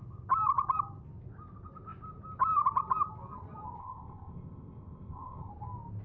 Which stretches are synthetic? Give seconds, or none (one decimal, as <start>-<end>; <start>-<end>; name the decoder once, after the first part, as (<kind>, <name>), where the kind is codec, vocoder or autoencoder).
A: 3.8-5.5 (codec, ZipCodec)